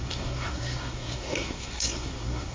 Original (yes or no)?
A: no